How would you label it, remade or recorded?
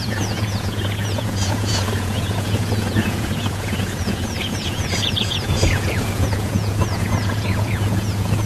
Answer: remade